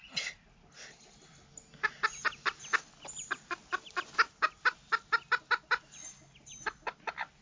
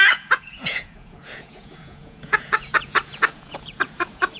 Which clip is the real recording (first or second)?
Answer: first